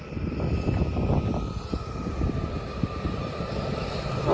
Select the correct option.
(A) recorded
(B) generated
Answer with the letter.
A